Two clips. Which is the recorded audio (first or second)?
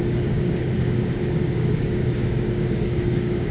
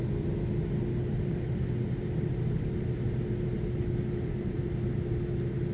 second